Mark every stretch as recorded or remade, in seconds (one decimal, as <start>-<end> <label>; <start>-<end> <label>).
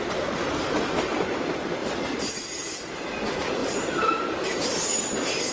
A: 0.0-1.8 recorded; 1.8-2.9 remade; 2.9-3.6 recorded; 3.6-4.7 remade; 4.7-5.5 recorded